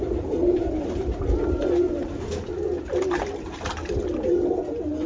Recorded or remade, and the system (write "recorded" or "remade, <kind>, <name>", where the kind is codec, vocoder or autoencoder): recorded